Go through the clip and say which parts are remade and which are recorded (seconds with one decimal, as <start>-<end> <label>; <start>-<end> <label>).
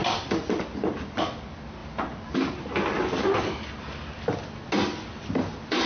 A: 0.0-5.9 recorded